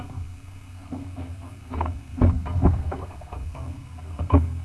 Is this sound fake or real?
fake